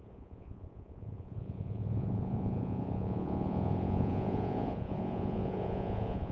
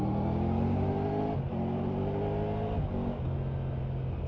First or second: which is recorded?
second